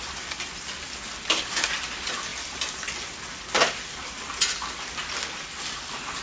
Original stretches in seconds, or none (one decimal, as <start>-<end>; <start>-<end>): 0.0-6.2